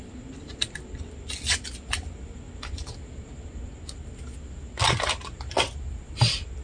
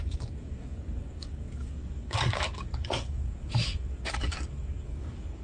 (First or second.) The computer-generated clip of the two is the second